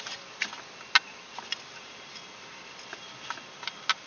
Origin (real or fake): real